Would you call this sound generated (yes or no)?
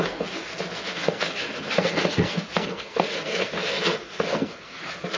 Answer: yes